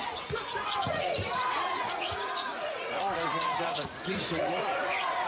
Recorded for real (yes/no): no